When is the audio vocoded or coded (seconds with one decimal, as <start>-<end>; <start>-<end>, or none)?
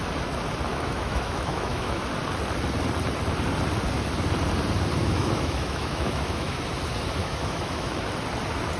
0.7-2.0; 5.0-6.7; 7.2-8.0